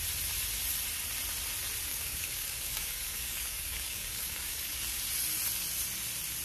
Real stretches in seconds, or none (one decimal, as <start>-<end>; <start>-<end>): 0.0-1.9; 4.8-6.4